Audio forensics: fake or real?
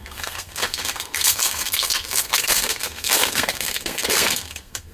fake